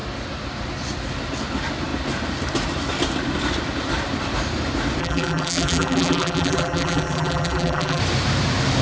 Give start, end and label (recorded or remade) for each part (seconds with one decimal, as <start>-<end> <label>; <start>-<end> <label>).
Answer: 0.0-5.0 recorded; 5.0-8.0 remade; 8.0-8.8 recorded